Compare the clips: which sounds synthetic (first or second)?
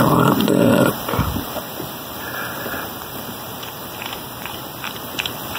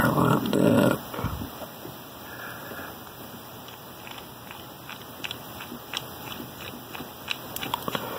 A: first